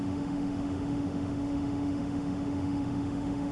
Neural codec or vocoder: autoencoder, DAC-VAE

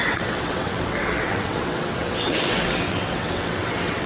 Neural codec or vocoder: vocoder, WaveNeXt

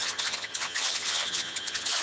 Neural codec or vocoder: vocoder, HiFi-GAN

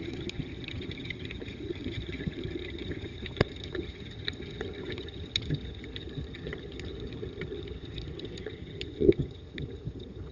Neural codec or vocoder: vocoder, HiFi-GAN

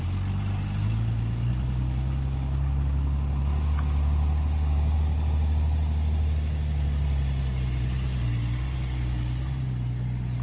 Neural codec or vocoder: none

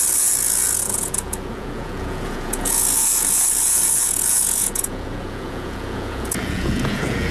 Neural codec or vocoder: vocoder, Vocos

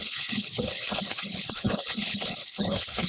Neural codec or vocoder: codec, HILCodec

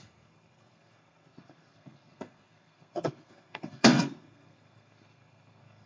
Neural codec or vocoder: codec, SNAC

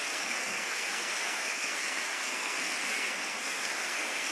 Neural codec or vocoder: codec, SNAC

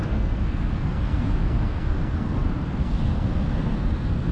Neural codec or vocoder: codec, SNAC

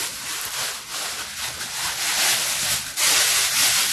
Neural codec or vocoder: none